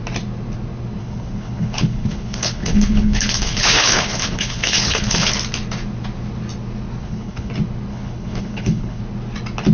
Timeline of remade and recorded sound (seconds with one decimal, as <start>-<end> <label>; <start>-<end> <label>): 0.0-1.0 recorded; 1.0-5.3 remade; 5.3-7.0 recorded; 7.0-7.5 remade; 7.5-7.9 recorded; 7.9-9.0 remade; 9.0-9.7 recorded

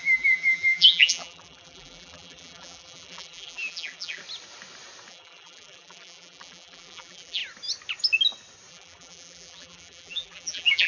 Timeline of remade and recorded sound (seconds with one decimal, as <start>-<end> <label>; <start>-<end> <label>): 0.0-4.2 remade; 4.2-5.1 recorded; 5.1-7.4 remade; 7.4-8.7 recorded; 8.7-10.9 remade